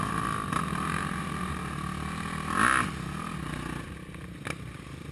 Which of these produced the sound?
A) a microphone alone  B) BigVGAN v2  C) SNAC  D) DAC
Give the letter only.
A